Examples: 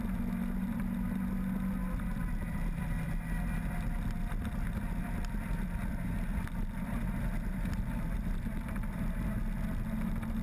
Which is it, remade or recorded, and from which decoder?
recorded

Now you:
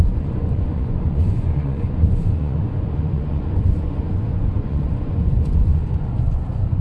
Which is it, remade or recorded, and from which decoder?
remade, vocoder, Vocos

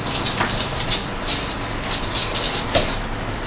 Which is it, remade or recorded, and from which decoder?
recorded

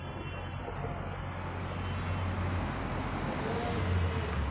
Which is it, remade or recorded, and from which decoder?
recorded